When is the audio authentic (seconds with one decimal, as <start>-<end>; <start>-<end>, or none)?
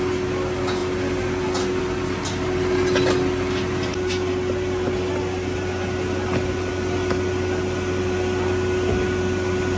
0.0-9.8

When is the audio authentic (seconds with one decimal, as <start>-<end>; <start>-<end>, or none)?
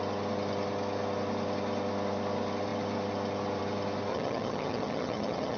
0.0-4.1